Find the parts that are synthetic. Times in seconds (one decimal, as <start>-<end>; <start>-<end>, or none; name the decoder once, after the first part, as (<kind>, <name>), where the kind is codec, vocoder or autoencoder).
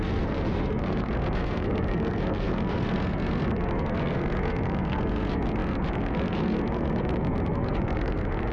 0.0-8.5 (codec, SNAC)